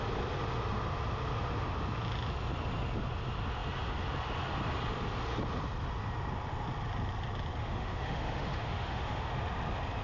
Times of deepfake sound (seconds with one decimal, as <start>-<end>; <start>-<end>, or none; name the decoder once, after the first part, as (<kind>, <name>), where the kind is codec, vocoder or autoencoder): 7.6-9.3 (autoencoder, DAC-VAE)